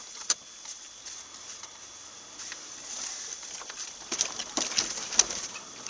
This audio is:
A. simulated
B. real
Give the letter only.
B